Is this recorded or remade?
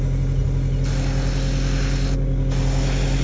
recorded